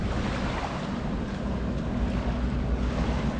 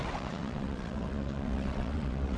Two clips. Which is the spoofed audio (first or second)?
second